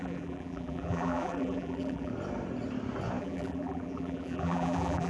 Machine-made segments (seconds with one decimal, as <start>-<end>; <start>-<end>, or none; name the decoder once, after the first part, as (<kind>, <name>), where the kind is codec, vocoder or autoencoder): 0.0-2.1 (vocoder, BigVGAN v2); 3.2-5.1